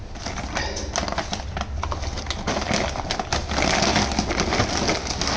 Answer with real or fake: real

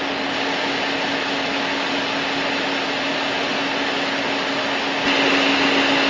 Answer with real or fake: real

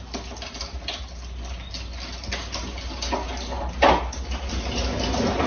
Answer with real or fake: real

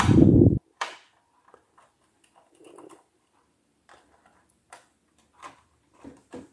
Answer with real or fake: fake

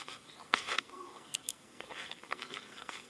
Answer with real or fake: fake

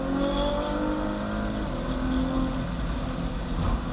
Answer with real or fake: real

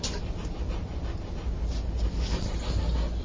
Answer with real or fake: real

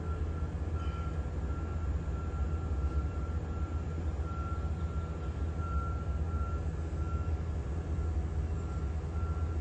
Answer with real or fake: real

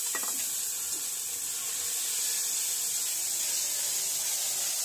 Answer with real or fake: real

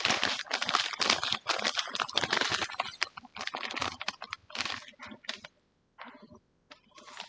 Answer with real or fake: real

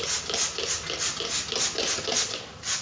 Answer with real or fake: real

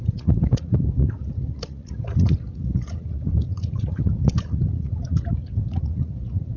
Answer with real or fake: fake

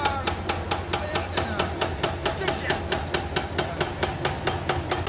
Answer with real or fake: real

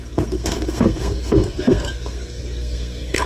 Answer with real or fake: fake